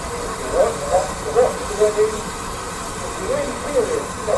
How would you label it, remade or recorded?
recorded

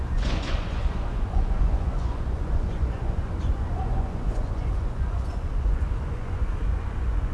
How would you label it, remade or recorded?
remade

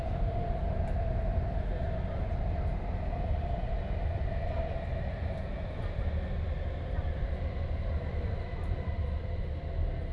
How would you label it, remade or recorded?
recorded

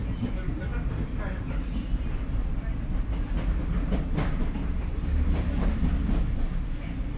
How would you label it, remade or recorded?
recorded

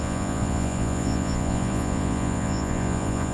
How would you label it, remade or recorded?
remade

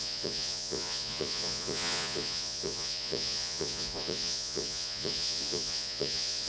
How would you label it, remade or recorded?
remade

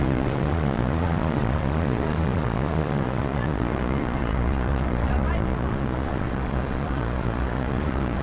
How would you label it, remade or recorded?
remade